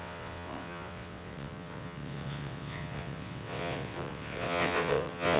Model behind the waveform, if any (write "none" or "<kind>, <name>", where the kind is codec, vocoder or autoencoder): vocoder, WaveNeXt